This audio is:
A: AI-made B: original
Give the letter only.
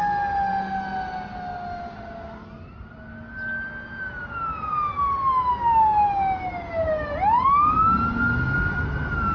B